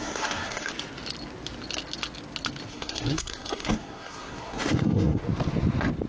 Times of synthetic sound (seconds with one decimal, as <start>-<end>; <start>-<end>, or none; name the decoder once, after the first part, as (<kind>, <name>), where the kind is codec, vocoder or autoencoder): 0.0-0.7 (codec, SNAC); 2.7-5.2

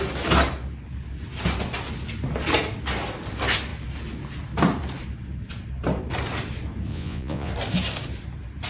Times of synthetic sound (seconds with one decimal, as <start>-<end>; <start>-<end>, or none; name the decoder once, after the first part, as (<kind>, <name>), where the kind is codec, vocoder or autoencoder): 6.9-7.5 (vocoder, Vocos)

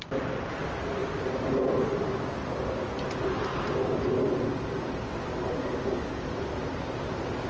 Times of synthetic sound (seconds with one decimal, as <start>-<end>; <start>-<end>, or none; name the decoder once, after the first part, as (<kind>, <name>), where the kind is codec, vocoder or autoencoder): none

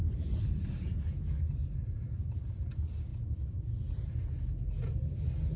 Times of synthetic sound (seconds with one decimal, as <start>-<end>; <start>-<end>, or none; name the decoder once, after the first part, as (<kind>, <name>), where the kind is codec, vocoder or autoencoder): 1.6-2.4 (vocoder, BigVGAN v2)

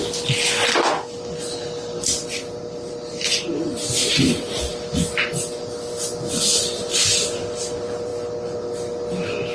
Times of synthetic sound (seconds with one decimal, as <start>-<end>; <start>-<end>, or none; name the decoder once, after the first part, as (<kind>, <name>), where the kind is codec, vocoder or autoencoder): none

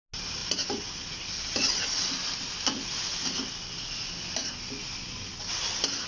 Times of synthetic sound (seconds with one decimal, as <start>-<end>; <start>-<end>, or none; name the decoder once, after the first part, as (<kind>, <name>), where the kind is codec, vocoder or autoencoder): none